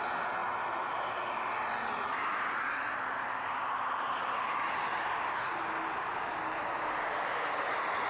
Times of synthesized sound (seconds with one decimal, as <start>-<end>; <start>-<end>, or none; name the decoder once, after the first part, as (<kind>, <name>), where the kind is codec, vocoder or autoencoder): none